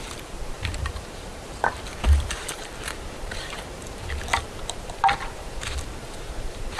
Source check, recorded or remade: remade